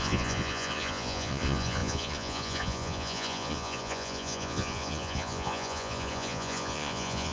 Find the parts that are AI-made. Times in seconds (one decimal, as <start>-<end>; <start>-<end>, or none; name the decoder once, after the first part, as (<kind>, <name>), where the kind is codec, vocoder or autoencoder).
0.0-7.3 (vocoder, Vocos)